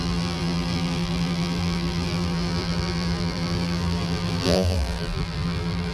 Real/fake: fake